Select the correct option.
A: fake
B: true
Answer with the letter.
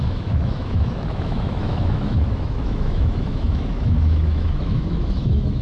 A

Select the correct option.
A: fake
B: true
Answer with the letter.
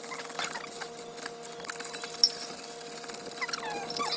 B